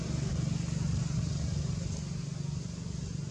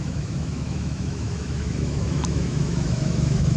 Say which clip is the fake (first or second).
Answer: second